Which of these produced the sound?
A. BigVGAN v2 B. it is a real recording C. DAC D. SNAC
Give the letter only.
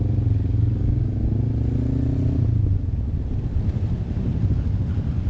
B